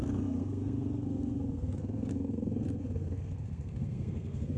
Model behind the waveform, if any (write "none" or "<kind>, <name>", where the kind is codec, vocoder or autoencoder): codec, SNAC